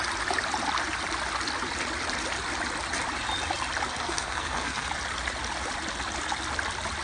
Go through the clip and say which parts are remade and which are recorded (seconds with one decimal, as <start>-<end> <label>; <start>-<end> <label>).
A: 0.0-3.9 recorded; 3.9-4.9 remade; 4.9-7.0 recorded